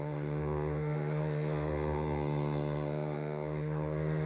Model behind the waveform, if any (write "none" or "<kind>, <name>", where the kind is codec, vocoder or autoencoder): autoencoder, DAC-VAE